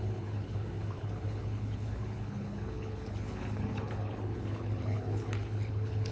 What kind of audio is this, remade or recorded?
remade